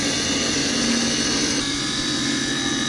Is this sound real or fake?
real